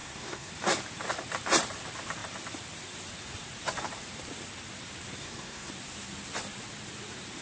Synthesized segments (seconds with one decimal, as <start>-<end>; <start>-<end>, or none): 0.0-0.5; 5.2-5.7